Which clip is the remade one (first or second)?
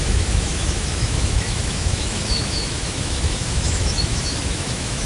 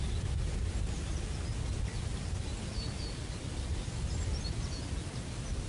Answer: first